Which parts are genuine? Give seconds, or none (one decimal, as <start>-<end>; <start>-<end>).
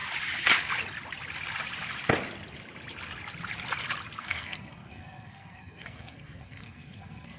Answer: 0.0-4.2